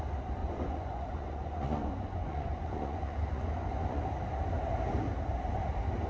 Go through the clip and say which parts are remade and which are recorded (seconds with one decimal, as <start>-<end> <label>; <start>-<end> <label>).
0.0-0.4 recorded; 0.4-4.0 remade; 4.0-6.1 recorded